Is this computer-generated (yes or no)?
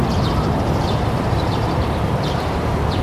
yes